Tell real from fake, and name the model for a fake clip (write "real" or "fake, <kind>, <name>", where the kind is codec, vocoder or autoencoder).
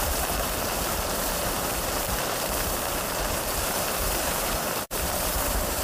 fake, vocoder, BigVGAN v2